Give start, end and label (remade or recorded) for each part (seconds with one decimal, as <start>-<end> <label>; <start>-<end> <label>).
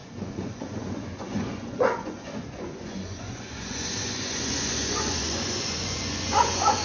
0.0-6.8 remade